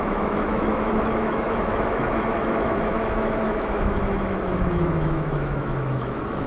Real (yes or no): no